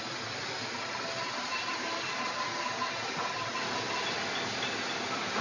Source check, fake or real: real